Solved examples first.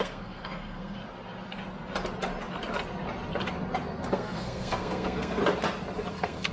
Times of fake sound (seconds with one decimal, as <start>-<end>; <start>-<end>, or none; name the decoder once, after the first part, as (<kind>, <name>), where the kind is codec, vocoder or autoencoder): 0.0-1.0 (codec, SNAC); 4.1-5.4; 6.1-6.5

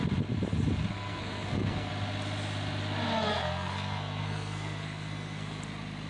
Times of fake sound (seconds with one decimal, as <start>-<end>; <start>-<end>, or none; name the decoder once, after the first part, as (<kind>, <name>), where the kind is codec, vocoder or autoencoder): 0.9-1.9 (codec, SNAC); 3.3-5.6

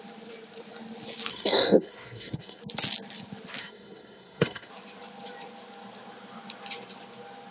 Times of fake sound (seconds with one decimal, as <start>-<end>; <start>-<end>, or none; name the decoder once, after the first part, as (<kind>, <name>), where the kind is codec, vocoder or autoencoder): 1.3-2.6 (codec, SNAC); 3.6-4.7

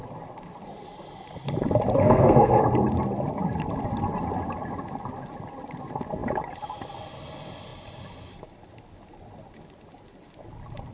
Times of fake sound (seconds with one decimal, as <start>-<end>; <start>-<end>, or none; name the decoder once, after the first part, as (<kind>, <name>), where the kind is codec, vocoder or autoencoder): 2.0-2.6 (codec, SNAC)

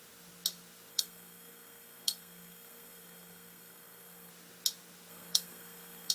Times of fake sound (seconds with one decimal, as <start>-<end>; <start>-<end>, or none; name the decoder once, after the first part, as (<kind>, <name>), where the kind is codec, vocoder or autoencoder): 0.9-4.3 (codec, SNAC); 5.1-6.1